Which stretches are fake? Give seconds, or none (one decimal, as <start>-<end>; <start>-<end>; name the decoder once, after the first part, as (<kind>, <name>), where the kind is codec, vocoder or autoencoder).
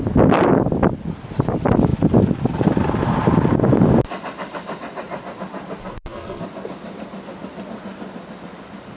5.8-6.4 (codec, SNAC)